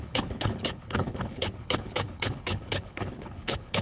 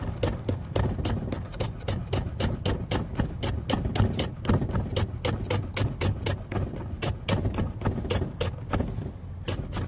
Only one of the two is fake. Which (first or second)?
first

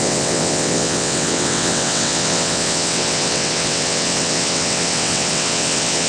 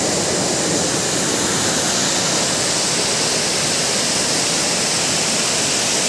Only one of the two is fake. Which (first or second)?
first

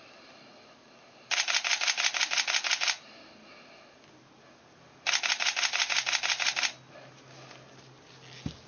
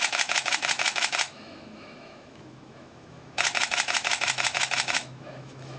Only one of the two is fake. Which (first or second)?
second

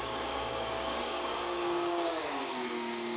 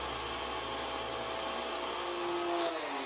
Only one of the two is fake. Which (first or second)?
first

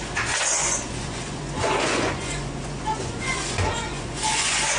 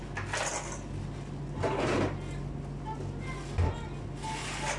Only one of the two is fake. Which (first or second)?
first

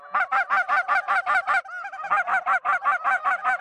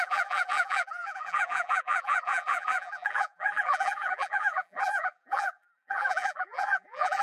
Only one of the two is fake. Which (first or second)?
second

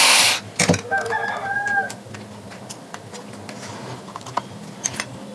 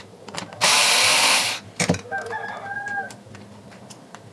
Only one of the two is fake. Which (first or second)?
second